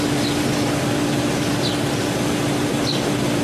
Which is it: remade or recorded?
recorded